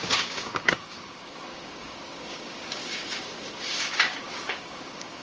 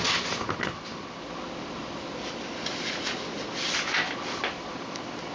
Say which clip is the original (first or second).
second